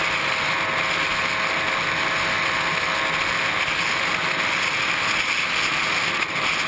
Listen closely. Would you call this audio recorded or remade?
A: recorded